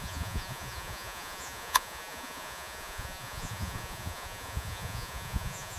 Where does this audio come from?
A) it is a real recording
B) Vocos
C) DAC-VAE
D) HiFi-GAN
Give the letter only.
B